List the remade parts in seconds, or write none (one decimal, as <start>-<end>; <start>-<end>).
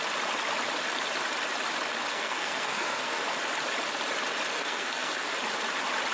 2.1-3.2; 4.5-5.3